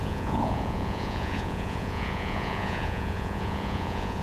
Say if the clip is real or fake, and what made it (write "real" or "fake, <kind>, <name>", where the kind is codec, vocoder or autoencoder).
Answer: fake, vocoder, Vocos